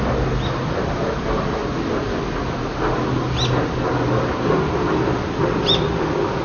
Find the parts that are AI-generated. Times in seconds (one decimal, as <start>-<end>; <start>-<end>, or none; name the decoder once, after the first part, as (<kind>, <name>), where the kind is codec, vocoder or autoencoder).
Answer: none